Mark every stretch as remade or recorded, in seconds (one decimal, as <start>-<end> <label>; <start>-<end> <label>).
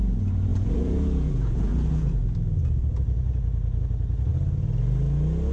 0.0-0.5 recorded; 0.5-3.8 remade; 3.8-5.5 recorded